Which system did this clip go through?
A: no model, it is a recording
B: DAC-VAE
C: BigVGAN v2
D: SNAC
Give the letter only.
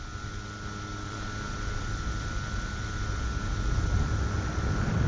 C